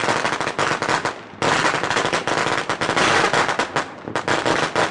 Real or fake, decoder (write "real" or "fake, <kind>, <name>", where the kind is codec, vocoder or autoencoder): real